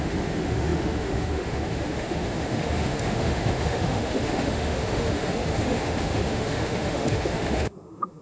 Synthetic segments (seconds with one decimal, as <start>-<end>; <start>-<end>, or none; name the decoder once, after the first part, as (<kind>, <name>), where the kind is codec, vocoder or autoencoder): 0.0-8.2 (autoencoder, DAC-VAE)